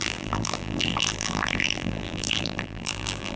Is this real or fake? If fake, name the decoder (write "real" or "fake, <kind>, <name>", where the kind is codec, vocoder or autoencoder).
fake, vocoder, BigVGAN v2